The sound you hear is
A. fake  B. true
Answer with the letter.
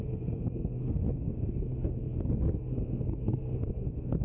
A